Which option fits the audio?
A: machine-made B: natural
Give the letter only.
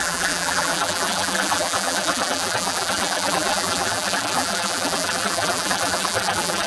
A